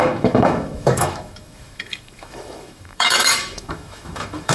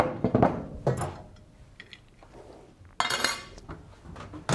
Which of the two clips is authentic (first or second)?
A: second